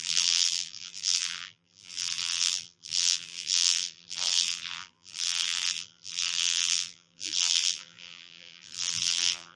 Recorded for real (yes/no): no